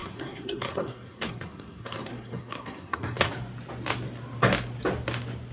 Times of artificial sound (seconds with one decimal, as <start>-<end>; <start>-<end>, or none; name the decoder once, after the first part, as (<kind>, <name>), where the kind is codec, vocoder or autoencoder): 0.0-3.3 (codec, SNAC)